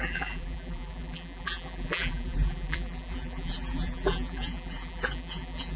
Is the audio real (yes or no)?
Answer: no